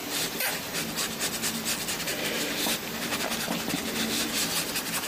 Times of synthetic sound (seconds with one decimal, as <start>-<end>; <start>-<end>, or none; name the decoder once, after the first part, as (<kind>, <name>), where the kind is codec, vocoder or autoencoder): 0.0-0.7 (vocoder, BigVGAN v2); 2.1-2.6